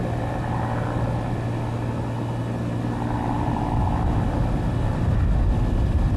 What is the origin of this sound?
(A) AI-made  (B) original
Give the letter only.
B